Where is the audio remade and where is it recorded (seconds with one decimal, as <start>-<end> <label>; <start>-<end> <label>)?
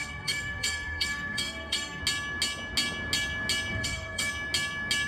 0.0-2.0 remade; 2.0-3.7 recorded; 3.7-4.3 remade; 4.3-5.1 recorded